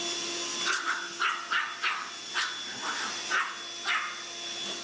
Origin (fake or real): real